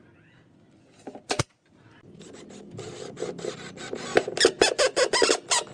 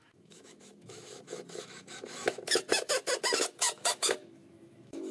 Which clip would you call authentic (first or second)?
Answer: first